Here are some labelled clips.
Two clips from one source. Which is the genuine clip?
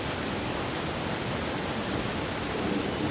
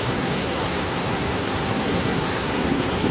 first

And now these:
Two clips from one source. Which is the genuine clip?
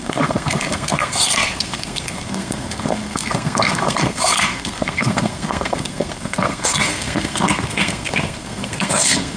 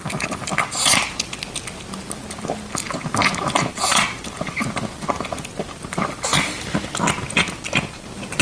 second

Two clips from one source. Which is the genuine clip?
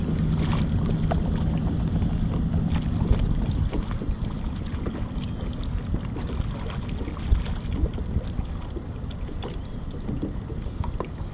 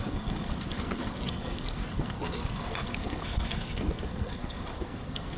first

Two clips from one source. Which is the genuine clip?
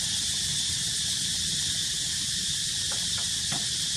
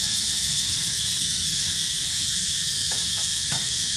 first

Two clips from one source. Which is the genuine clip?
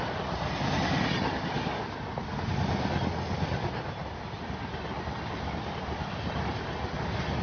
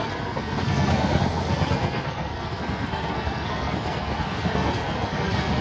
first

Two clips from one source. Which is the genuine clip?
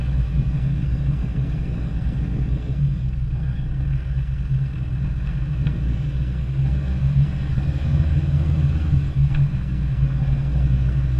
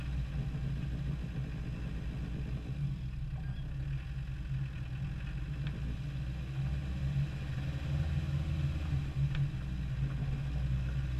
second